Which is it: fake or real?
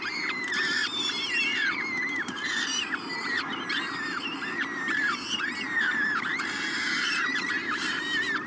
fake